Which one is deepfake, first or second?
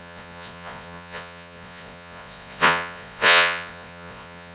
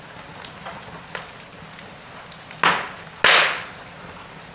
first